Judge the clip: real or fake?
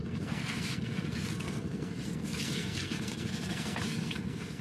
fake